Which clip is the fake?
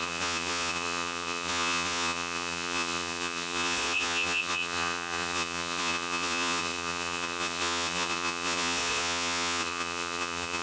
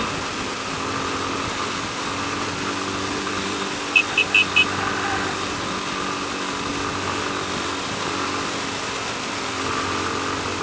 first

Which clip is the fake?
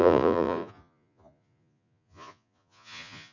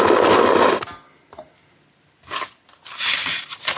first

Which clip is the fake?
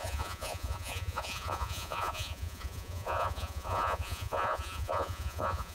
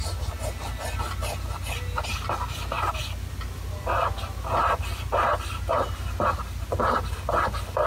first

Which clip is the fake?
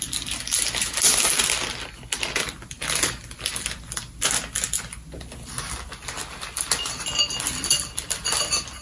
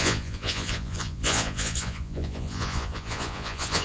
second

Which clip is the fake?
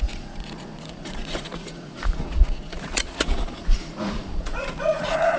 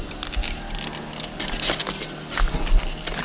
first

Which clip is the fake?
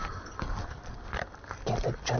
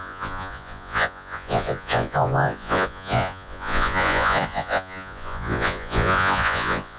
second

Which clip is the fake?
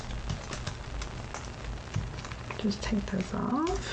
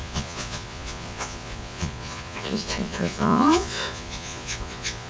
second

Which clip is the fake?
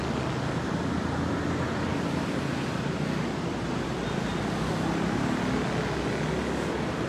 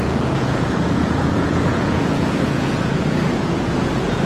second